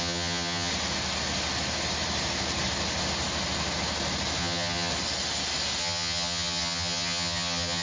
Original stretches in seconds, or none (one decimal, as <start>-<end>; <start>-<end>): 0.7-4.4; 4.9-5.8